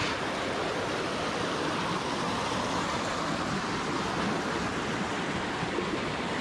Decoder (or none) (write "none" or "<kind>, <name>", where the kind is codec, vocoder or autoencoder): none